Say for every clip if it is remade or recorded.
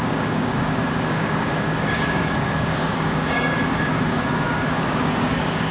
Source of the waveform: remade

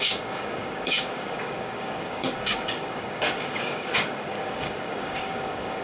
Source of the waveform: remade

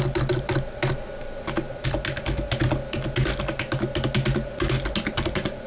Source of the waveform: recorded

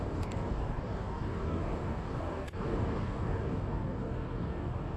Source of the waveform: remade